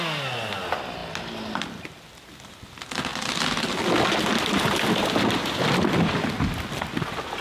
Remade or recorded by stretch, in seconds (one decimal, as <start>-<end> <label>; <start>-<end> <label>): 0.0-7.4 recorded